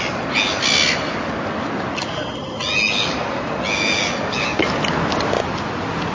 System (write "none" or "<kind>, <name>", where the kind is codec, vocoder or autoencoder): none